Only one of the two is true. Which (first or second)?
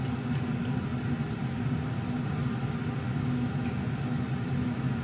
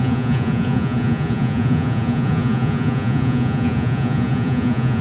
first